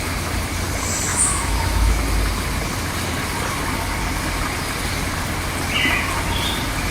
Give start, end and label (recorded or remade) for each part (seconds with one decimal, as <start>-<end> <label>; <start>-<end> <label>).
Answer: 0.0-1.1 recorded; 1.1-2.0 remade; 2.0-6.9 recorded